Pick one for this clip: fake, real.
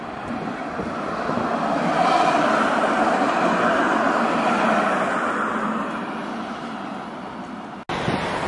real